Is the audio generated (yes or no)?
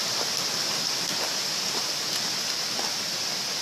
no